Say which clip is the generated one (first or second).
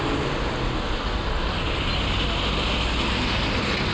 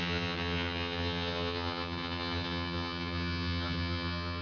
second